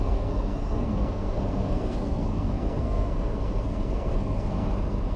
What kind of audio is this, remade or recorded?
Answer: remade